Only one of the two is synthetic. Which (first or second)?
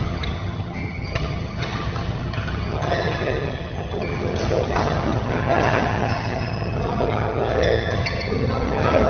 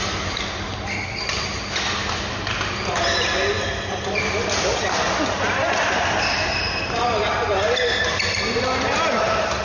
first